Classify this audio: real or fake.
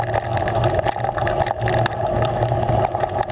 real